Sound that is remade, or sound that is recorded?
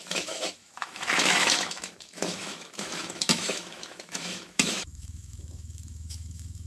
remade